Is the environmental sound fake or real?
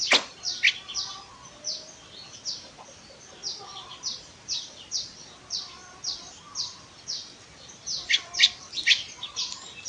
real